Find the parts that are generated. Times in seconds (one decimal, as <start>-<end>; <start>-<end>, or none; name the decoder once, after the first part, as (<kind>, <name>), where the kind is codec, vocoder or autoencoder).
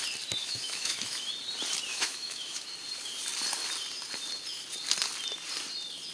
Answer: 0.4-1.3 (autoencoder, DAC-VAE); 1.9-2.7